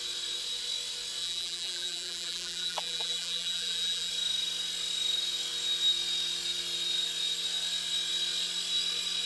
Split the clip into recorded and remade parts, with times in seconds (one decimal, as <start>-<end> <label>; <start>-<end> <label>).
0.0-1.2 recorded; 1.2-4.1 remade; 4.1-9.3 recorded